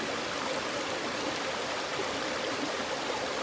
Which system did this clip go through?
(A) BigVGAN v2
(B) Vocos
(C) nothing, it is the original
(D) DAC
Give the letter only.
C